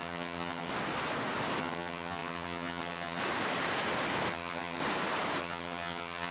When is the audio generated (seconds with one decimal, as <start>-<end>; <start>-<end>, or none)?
0.0-0.7; 1.6-3.2; 4.3-4.8; 5.4-6.3